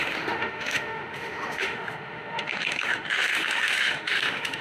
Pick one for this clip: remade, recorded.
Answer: remade